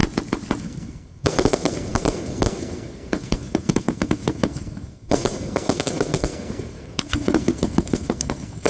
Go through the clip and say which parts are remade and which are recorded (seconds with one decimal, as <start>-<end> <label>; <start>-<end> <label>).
0.0-0.6 recorded; 0.6-8.7 remade